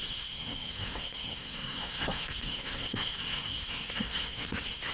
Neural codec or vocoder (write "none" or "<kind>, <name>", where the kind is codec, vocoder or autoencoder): codec, SNAC